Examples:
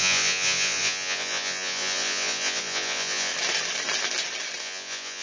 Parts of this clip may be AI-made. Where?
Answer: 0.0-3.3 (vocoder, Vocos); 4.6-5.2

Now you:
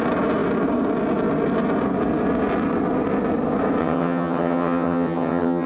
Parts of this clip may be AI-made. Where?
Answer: 3.8-5.7 (vocoder, HiFi-GAN)

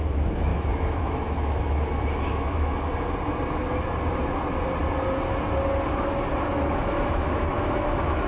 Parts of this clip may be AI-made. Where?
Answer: 0.0-2.9 (autoencoder, DAC-VAE); 6.5-8.3

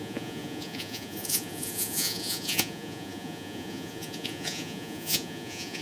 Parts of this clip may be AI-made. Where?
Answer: 0.0-5.8 (vocoder, Vocos)